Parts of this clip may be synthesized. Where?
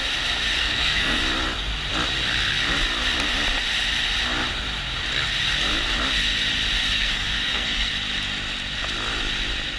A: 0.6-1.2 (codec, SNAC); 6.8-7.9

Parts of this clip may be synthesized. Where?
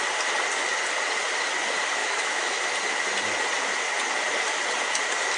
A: 2.0-2.6 (autoencoder, DAC-VAE)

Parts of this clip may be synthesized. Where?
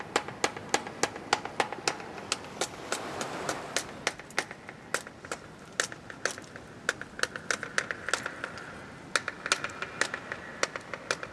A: none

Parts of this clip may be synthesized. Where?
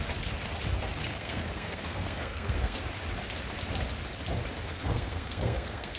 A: 1.1-2.8 (codec, SNAC); 4.7-6.0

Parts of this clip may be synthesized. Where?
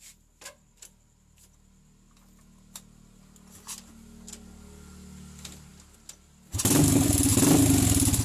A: none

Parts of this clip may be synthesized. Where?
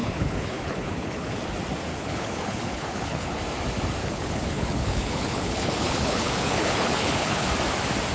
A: 0.0-1.4 (codec, HILCodec); 1.9-3.4; 4.0-7.5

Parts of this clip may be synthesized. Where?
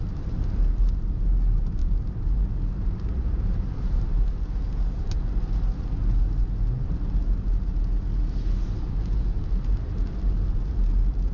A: 1.8-3.8 (vocoder, BigVGAN v2)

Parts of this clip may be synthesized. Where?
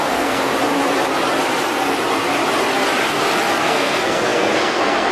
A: 0.0-0.5 (codec, SNAC); 3.6-5.1